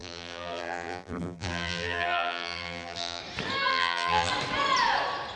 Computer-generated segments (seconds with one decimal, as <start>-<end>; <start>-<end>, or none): 0.0-3.2; 3.7-4.3

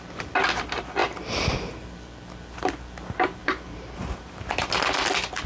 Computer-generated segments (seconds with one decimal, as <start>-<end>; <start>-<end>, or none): 1.0-1.7; 3.4-4.7